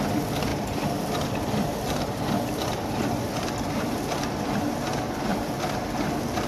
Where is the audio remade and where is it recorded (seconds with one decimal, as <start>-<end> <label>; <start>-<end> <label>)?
0.0-0.5 recorded; 0.5-2.4 remade; 2.4-5.3 recorded; 5.3-5.8 remade; 5.8-6.5 recorded